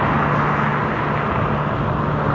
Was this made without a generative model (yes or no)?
yes